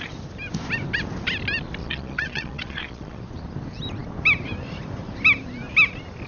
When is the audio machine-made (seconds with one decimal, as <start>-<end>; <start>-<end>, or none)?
1.8-3.2